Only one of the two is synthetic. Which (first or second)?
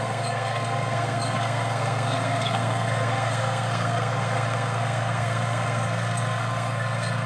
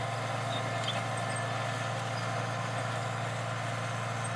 first